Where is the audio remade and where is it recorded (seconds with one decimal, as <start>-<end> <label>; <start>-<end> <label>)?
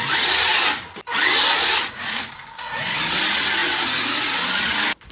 0.0-5.1 recorded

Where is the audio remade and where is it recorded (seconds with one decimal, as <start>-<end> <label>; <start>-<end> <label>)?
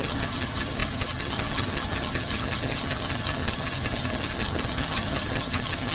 0.0-5.9 remade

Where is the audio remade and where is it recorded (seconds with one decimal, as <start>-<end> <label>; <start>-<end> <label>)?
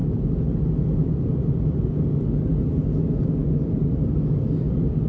0.0-5.1 recorded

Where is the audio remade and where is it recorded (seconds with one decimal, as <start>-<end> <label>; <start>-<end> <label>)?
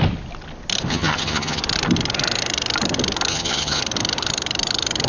0.0-0.9 recorded; 0.9-1.6 remade; 1.6-3.3 recorded; 3.3-3.8 remade; 3.8-5.1 recorded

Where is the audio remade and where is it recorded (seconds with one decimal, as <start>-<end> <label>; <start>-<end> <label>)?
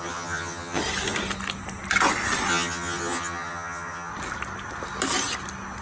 0.0-0.8 remade; 0.8-2.5 recorded; 2.5-4.1 remade; 4.1-5.8 recorded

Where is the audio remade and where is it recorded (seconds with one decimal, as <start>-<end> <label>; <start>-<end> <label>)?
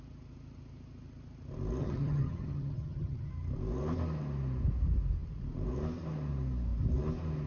0.0-1.8 recorded; 1.8-3.3 remade; 3.3-7.5 recorded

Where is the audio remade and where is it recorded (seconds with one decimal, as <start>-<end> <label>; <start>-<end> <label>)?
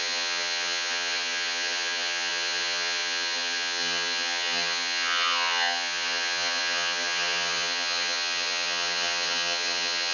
0.0-10.1 remade